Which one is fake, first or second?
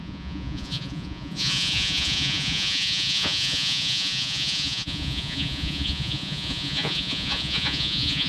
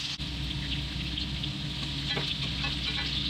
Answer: first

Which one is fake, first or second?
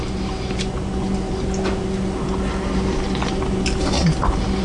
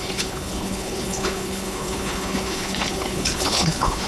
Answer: second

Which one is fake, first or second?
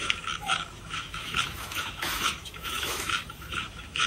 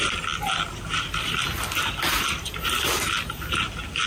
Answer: first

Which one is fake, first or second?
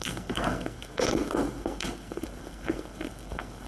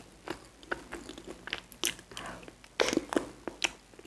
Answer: first